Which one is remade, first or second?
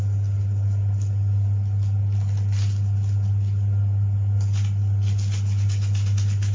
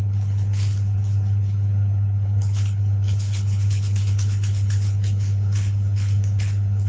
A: second